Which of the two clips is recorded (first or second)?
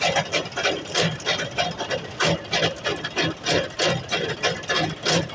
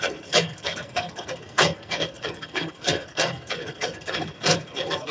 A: first